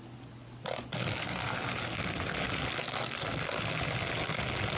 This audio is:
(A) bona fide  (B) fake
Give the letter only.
A